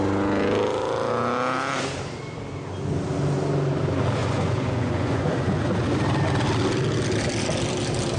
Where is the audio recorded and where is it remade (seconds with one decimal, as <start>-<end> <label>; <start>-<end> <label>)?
0.0-4.2 recorded; 4.2-5.6 remade; 5.6-8.2 recorded